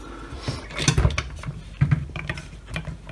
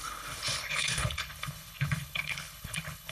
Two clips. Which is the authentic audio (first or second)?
first